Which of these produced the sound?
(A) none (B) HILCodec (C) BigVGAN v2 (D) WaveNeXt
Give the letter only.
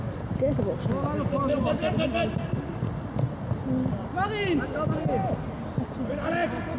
A